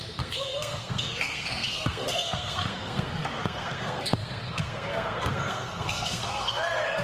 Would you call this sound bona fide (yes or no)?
no